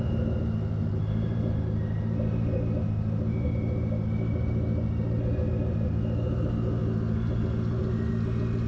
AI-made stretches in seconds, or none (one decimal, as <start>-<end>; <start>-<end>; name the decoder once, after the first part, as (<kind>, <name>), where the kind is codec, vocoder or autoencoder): none